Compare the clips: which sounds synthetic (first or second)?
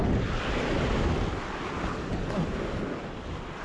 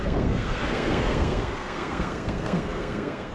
second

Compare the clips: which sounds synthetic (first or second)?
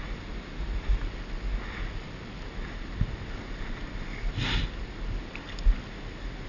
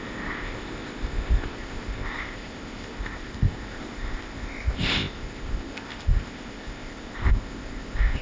second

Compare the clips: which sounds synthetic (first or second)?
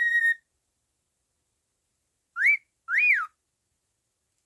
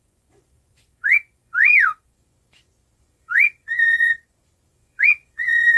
second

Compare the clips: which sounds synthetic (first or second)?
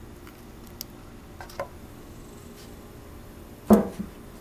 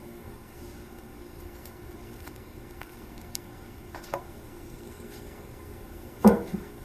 second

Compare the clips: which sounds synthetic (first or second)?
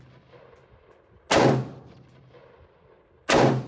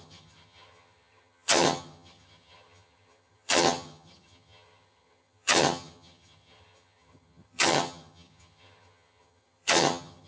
second